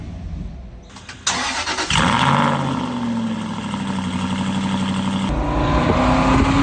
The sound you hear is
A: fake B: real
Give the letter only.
B